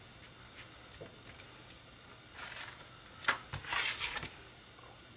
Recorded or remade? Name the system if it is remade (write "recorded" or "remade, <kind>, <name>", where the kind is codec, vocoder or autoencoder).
recorded